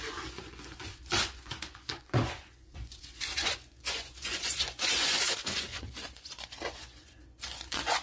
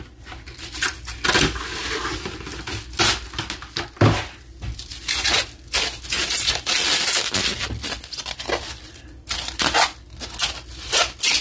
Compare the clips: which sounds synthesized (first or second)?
first